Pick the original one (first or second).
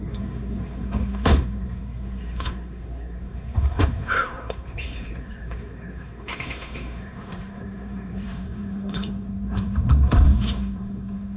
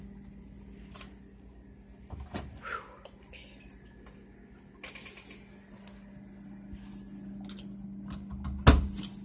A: second